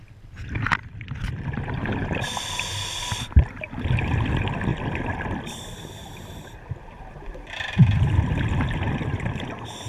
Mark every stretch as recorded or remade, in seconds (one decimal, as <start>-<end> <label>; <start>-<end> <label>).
0.0-9.9 recorded